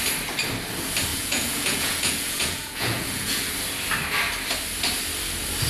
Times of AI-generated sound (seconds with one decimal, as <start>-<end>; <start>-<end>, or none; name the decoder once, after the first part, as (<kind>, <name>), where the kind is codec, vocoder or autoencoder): 1.1-3.5 (vocoder, Vocos)